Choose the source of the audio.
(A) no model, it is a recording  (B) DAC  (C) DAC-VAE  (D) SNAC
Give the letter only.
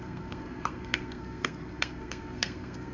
D